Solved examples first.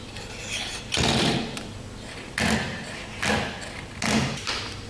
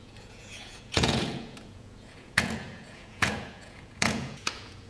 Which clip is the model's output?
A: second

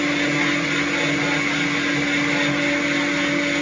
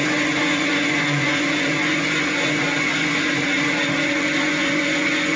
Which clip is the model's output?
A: second